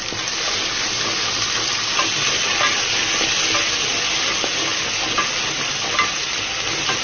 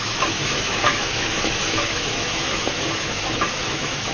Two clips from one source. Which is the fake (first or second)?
second